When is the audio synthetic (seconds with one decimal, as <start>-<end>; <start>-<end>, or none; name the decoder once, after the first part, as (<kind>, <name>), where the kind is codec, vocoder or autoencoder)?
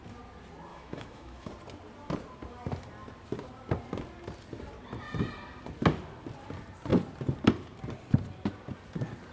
0.7-1.5 (autoencoder, DAC-VAE)